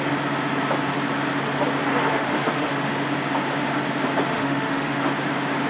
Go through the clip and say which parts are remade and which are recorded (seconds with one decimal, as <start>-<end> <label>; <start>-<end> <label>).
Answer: 0.0-2.1 recorded; 2.1-2.9 remade; 2.9-4.3 recorded; 4.3-5.0 remade; 5.0-5.7 recorded